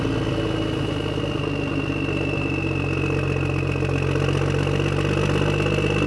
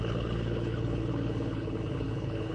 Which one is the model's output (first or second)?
second